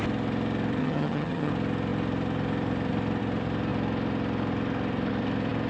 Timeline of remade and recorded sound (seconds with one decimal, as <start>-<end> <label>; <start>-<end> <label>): 0.0-0.8 recorded; 0.8-1.5 remade; 1.5-5.7 recorded

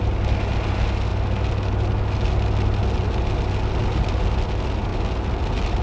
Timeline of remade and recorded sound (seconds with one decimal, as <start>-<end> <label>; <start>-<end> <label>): 0.0-5.8 recorded

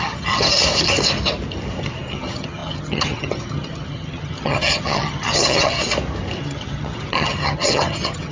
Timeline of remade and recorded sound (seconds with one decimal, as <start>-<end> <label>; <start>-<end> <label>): 0.0-0.6 remade; 0.6-1.8 recorded; 1.8-5.8 remade; 5.8-6.4 recorded; 6.4-8.3 remade

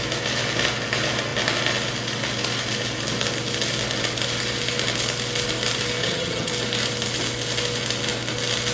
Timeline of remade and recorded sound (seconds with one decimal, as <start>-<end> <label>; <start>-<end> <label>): 0.0-6.0 recorded; 6.0-6.5 remade; 6.5-8.7 recorded

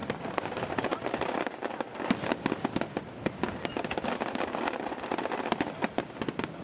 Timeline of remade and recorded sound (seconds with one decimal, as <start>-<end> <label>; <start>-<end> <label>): 0.0-6.6 recorded

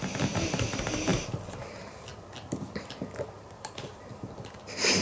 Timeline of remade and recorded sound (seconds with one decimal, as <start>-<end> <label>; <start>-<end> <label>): 0.0-5.0 recorded

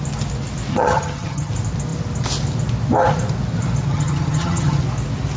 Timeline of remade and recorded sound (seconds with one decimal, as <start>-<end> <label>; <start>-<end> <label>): 0.0-0.7 recorded; 0.7-1.5 remade; 1.5-3.9 recorded; 3.9-4.8 remade; 4.8-5.4 recorded

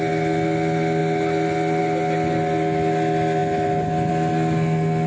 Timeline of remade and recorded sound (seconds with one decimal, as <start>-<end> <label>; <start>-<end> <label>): 0.0-5.1 recorded